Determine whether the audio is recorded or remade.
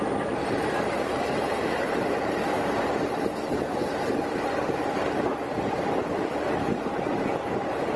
remade